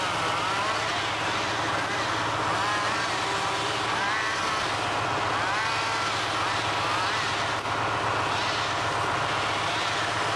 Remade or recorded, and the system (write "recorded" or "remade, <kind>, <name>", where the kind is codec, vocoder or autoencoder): recorded